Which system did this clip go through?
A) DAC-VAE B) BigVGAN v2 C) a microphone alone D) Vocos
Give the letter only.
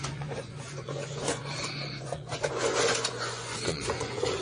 D